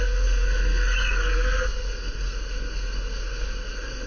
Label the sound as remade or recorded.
remade